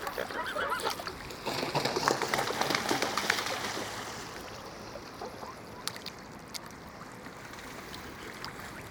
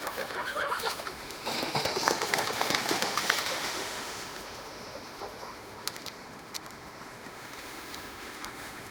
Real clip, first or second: first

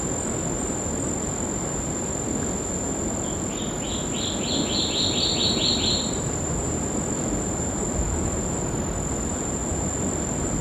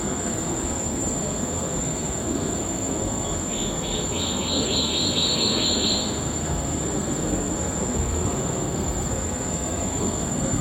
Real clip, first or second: first